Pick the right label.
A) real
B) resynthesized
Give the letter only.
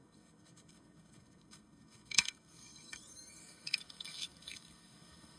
B